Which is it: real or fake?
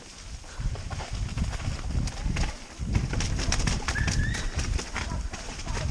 real